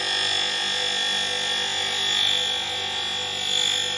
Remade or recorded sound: recorded